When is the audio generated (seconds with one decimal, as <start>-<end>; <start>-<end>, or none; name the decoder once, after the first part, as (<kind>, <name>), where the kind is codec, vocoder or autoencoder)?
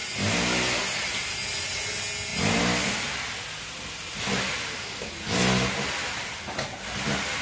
none